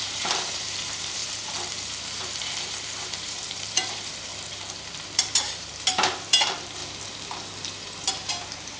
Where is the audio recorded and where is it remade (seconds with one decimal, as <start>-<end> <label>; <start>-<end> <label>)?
0.0-4.3 remade; 4.3-5.2 recorded; 5.2-6.8 remade; 6.8-8.3 recorded; 8.3-8.8 remade